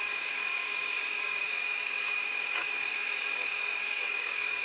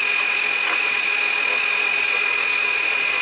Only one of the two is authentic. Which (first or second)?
second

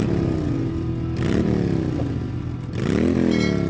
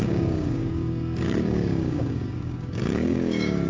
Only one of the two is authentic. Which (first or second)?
first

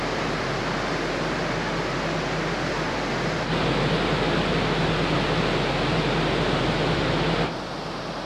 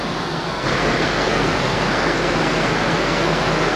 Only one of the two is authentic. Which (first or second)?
first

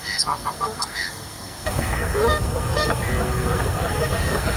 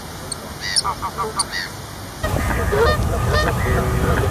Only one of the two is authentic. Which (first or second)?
second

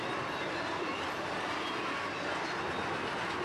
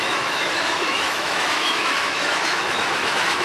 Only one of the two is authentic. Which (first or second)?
first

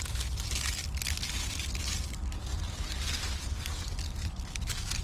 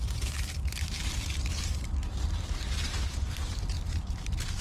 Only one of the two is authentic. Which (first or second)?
first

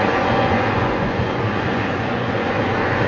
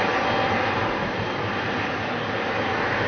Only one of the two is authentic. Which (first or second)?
second